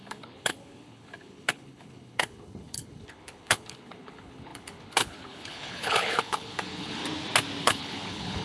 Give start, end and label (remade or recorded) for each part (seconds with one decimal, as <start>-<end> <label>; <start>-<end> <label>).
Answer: 0.0-7.0 remade; 7.0-7.6 recorded; 7.6-8.4 remade